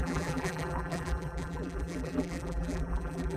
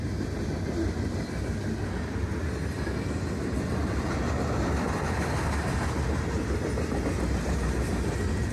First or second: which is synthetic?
first